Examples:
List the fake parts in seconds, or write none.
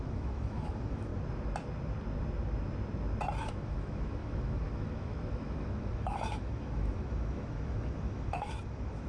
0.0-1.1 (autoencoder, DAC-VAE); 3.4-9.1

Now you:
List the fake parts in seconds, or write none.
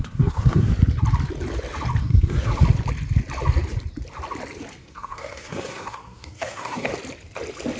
0.0-0.7 (codec, SNAC); 2.0-2.5; 4.8-6.9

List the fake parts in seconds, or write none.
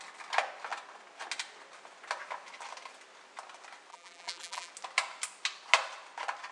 3.9-4.7 (vocoder, BigVGAN v2)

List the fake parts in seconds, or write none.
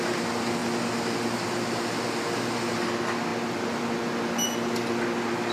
none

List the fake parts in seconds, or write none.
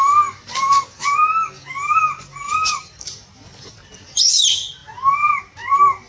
none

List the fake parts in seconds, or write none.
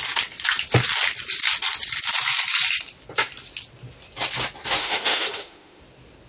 4.8-5.8 (autoencoder, DAC-VAE)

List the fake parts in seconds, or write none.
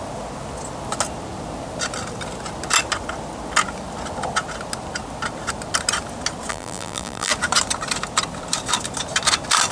6.5-7.3 (vocoder, BigVGAN v2)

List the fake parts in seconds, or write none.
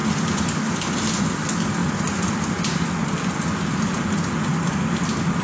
none